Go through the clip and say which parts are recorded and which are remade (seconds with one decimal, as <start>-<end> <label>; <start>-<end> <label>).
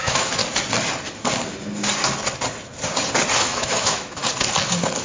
0.0-0.4 remade; 0.4-3.4 recorded; 3.4-4.2 remade; 4.2-5.0 recorded